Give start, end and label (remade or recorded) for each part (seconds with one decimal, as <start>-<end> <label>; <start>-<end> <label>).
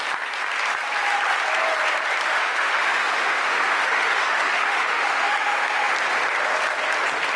0.0-2.3 recorded; 2.3-5.9 remade; 5.9-7.4 recorded